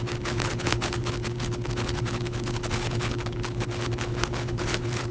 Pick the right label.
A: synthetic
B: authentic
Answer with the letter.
A